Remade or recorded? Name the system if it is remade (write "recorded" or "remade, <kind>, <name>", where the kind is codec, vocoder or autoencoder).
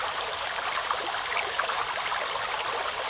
recorded